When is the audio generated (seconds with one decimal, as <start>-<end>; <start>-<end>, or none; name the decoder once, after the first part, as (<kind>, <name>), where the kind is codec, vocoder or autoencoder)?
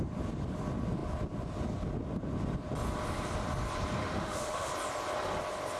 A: 4.0-4.7 (autoencoder, DAC-VAE)